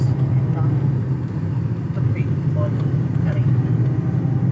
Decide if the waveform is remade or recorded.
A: recorded